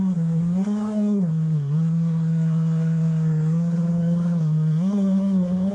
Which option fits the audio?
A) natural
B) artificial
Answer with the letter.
B